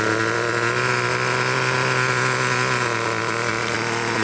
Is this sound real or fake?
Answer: real